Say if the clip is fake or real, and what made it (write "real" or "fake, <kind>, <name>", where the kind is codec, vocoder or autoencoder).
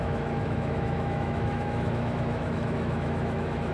fake, autoencoder, DAC-VAE